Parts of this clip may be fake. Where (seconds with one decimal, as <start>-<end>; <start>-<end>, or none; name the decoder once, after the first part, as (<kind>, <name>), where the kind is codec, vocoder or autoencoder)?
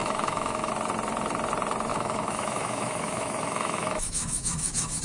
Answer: 0.0-0.7 (autoencoder, DAC-VAE); 1.9-5.0